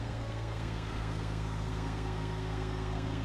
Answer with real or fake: fake